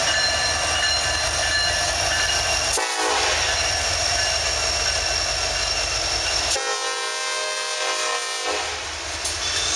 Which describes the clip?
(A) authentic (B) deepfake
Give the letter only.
A